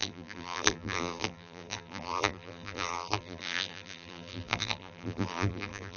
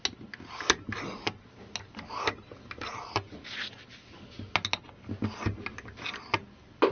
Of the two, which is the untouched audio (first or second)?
second